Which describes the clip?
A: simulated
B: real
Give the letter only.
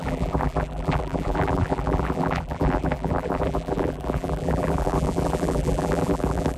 A